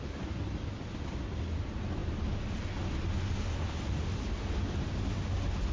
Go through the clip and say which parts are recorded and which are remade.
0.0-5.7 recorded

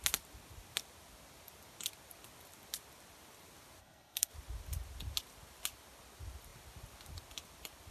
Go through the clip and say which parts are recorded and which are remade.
0.0-3.8 recorded; 3.8-4.3 remade; 4.3-7.9 recorded

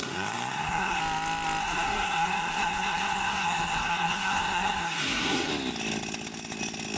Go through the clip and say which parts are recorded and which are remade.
0.0-1.0 remade; 1.0-1.6 recorded; 1.6-5.5 remade; 5.5-7.0 recorded

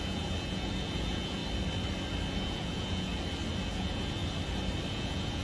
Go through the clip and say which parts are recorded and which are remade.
0.0-1.4 remade; 1.4-2.3 recorded; 2.3-3.1 remade; 3.1-3.7 recorded; 3.7-4.2 remade; 4.2-4.9 recorded; 4.9-5.4 remade

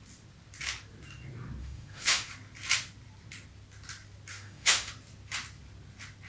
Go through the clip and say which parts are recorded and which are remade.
0.0-1.6 recorded; 1.6-2.3 remade; 2.3-4.3 recorded; 4.3-4.9 remade; 4.9-6.3 recorded

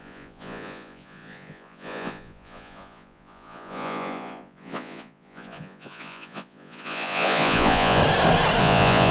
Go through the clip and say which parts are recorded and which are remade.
0.0-8.0 remade; 8.0-8.6 recorded; 8.6-9.1 remade

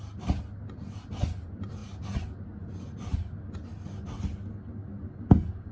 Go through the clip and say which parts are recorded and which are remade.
0.0-5.7 recorded